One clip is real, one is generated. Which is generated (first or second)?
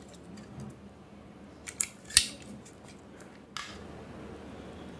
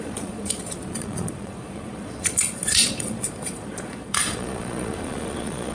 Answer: second